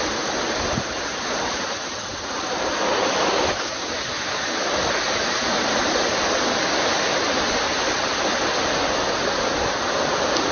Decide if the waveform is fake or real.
real